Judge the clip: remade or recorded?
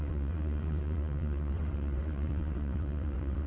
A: remade